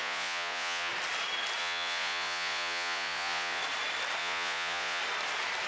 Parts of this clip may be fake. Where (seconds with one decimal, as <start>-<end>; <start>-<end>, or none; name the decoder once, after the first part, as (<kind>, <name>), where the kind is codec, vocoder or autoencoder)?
0.0-0.9 (vocoder, Vocos); 1.6-3.6; 4.2-5.0